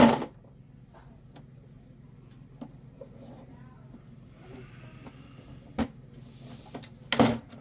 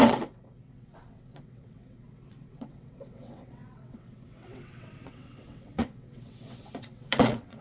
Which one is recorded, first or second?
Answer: first